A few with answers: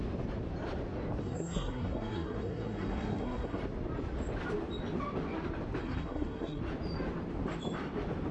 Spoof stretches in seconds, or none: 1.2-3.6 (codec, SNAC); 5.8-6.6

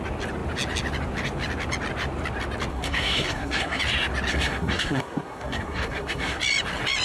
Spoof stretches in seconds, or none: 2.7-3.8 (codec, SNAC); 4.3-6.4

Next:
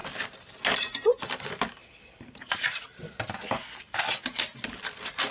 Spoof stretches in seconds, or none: none

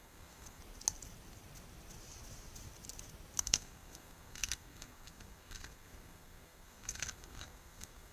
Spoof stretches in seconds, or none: 0.0-0.6 (codec, SNAC); 3.4-8.1